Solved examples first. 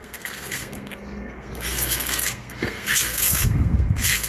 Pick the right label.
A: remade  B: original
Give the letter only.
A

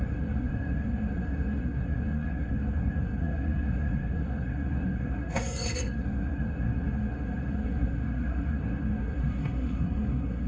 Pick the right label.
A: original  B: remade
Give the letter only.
B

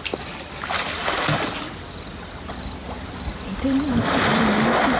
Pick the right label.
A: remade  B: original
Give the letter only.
B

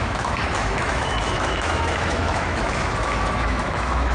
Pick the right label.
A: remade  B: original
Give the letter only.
A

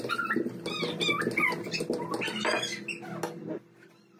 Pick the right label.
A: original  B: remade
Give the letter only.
A